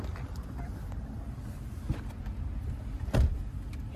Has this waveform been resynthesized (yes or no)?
no